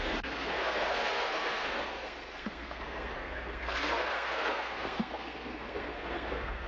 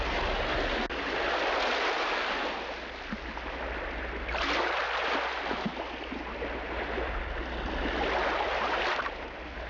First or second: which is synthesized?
first